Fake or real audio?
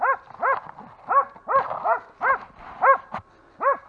real